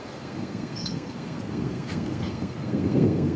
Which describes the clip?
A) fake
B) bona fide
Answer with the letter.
A